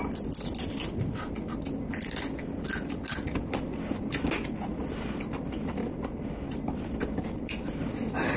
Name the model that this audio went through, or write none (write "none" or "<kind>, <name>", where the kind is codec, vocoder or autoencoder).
none